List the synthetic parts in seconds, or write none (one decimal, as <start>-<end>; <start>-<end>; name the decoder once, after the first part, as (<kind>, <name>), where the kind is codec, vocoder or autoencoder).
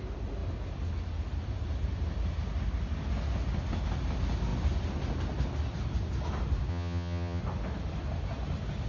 6.7-7.4 (vocoder, HiFi-GAN)